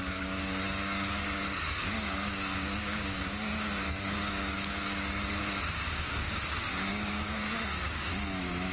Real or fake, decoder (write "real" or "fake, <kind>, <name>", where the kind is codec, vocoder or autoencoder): fake, codec, DAC